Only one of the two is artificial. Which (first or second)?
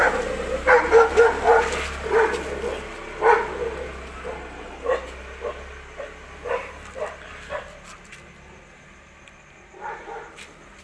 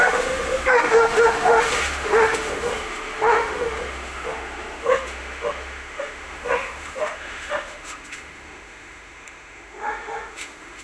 second